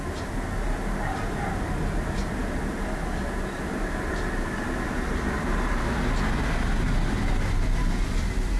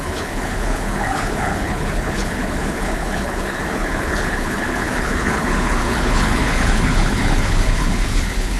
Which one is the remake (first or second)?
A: second